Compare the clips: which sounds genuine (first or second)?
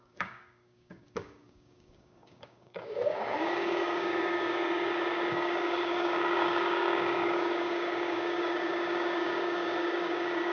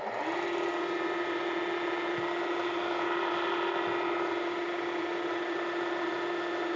second